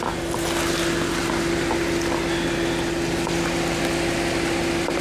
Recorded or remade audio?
recorded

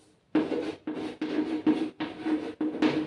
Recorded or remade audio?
recorded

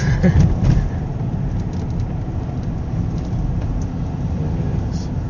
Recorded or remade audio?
recorded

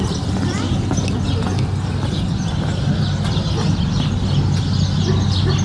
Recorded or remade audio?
recorded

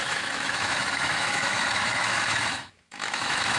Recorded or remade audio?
remade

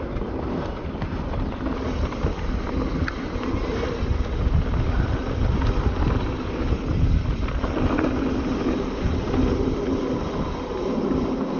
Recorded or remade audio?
recorded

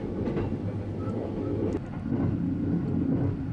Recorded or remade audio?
recorded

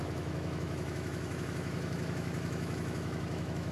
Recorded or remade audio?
remade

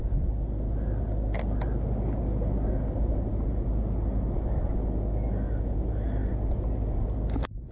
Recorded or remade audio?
recorded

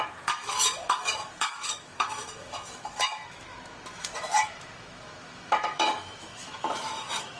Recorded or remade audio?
remade